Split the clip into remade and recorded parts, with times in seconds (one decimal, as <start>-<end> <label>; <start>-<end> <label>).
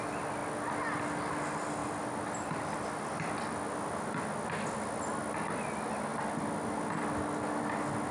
0.0-8.1 recorded